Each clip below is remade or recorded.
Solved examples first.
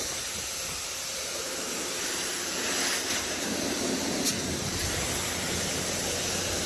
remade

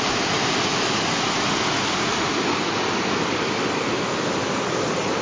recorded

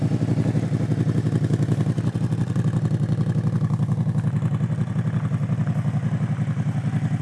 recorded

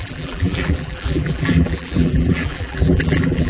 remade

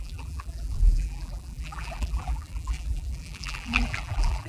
remade